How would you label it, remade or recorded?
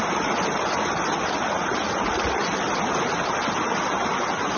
recorded